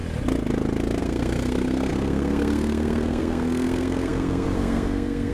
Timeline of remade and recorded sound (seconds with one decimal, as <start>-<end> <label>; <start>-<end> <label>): 0.0-1.0 recorded; 1.0-5.3 remade